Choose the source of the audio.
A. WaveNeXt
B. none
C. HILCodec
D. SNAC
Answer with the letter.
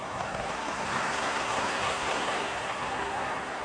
D